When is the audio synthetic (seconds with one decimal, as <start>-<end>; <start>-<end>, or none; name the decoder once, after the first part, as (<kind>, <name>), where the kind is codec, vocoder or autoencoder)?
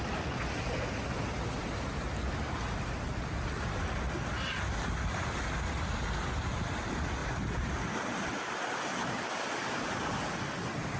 7.2-9.8 (vocoder, BigVGAN v2)